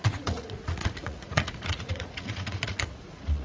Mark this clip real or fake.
fake